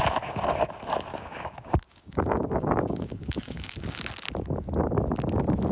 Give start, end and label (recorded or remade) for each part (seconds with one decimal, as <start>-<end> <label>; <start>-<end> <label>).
0.0-1.1 recorded; 1.1-4.0 remade; 4.0-5.7 recorded